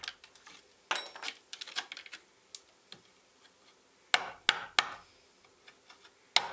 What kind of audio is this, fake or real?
real